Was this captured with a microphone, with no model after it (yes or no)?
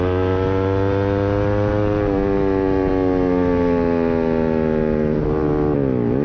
yes